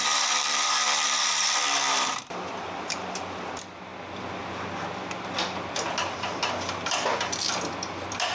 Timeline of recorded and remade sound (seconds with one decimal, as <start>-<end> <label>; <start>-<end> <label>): 0.0-3.9 remade; 3.9-6.0 recorded; 6.0-8.3 remade